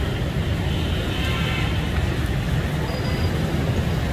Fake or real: real